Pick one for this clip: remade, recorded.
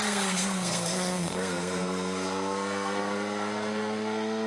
remade